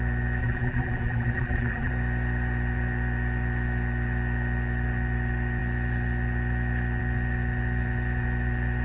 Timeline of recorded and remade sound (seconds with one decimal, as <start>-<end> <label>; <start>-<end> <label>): 0.0-0.4 recorded; 0.4-1.9 remade; 1.9-8.8 recorded